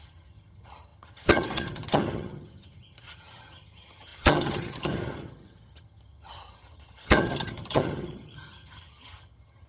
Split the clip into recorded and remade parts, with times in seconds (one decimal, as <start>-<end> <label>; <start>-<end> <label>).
0.0-9.7 remade